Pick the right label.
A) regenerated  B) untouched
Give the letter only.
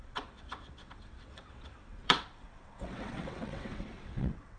A